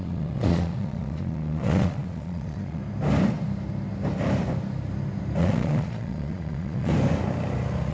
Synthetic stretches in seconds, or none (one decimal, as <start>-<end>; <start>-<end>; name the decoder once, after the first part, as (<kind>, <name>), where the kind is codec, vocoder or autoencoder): 0.0-2.8 (vocoder, Vocos); 5.4-6.9